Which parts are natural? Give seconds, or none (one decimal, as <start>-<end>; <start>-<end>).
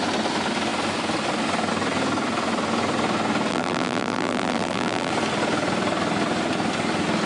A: 0.0-3.5; 5.1-7.3